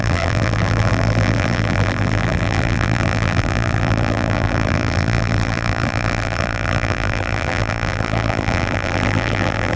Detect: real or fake fake